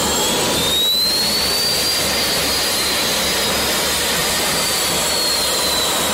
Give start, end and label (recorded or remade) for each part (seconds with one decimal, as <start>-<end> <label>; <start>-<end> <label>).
0.0-4.2 recorded; 4.2-6.1 remade